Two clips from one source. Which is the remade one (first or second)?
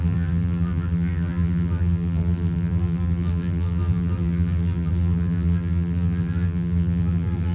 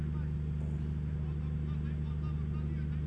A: first